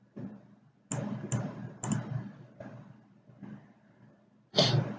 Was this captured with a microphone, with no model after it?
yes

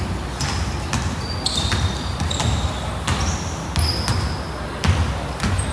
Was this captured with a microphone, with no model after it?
yes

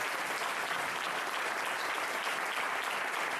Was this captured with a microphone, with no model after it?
yes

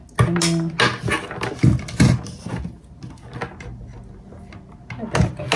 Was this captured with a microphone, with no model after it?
yes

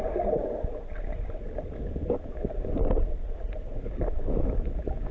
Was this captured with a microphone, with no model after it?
yes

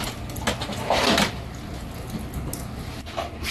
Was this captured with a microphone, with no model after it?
yes